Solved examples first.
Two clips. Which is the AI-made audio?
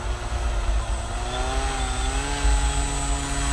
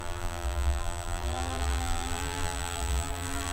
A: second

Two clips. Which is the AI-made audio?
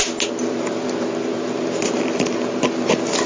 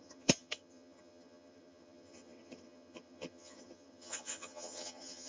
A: second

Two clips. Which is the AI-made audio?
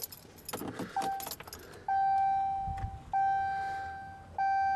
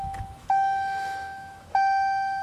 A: second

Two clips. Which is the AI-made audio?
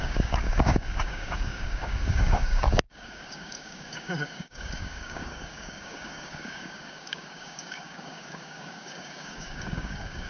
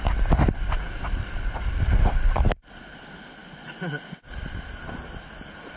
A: first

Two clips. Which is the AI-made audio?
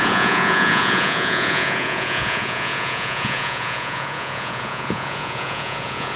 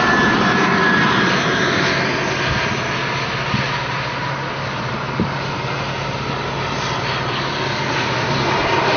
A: first